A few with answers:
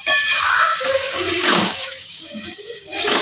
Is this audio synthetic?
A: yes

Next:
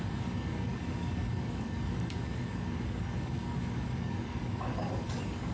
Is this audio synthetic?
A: yes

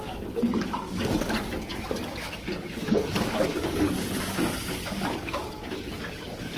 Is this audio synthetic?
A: yes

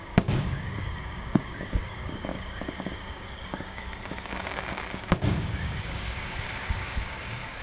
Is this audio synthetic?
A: yes